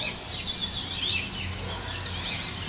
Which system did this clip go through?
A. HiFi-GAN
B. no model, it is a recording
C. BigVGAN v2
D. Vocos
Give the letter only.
B